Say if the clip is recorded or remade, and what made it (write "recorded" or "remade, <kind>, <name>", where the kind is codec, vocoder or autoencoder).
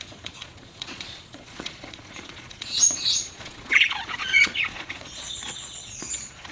remade, vocoder, Vocos